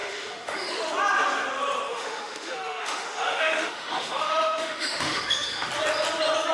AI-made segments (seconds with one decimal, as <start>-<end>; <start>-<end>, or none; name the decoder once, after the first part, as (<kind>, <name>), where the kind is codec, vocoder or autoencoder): 0.0-0.9 (autoencoder, DAC-VAE); 1.9-5.7

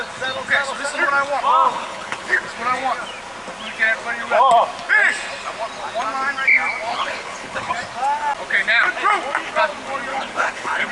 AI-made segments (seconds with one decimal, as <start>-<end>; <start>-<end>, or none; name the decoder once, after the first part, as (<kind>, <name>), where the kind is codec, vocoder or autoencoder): 1.7-2.4 (codec, HILCodec); 6.9-7.7; 10.1-10.9